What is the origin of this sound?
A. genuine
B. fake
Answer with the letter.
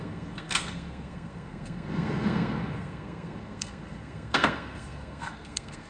B